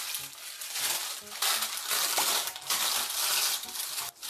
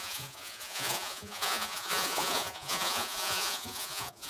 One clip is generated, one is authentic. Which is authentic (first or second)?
first